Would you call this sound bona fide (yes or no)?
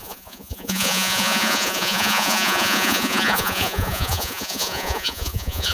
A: no